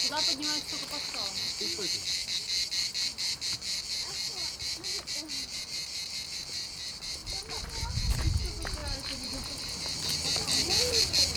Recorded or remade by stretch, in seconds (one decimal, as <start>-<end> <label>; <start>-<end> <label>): 0.0-7.2 recorded; 7.2-8.4 remade; 8.4-8.8 recorded; 8.8-11.0 remade; 11.0-11.4 recorded